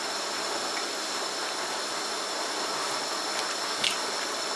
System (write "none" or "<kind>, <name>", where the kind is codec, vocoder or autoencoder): none